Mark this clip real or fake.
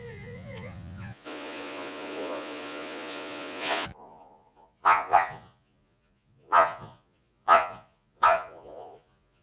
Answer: fake